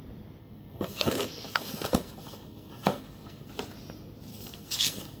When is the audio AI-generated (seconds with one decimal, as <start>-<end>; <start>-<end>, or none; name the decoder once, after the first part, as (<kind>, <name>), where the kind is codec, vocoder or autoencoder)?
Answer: 0.4-3.5 (codec, SNAC); 4.3-5.2